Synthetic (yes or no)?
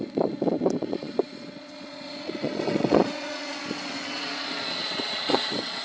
yes